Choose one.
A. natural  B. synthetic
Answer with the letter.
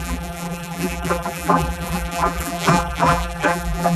B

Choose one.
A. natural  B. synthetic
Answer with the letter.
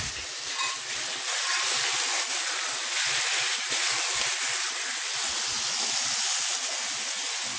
A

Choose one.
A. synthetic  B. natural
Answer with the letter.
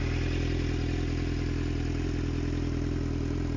B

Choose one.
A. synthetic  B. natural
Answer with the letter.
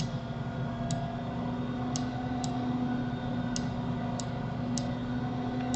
B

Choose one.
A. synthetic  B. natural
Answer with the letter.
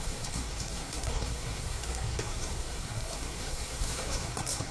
A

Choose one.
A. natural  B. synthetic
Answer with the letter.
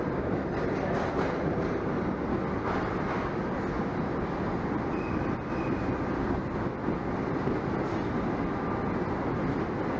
A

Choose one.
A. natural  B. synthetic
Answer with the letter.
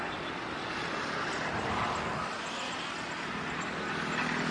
A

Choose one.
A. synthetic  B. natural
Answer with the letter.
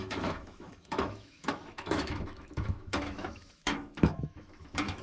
A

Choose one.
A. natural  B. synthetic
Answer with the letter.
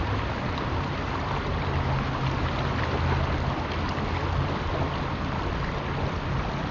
A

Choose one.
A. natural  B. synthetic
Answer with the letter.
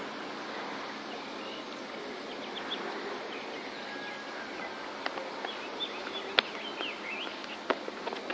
A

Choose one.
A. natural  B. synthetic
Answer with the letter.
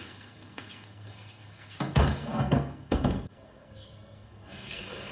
B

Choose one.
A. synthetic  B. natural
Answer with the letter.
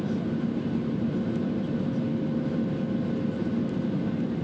B